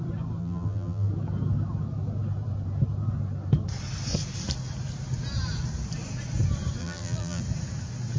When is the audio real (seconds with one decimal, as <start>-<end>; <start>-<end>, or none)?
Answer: 0.0-0.4; 1.1-6.8; 7.4-8.2